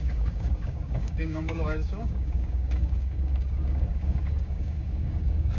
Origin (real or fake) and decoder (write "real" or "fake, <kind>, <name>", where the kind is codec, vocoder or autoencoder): fake, codec, DAC